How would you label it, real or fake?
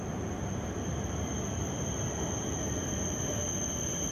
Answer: real